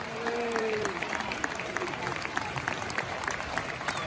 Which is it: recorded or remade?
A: remade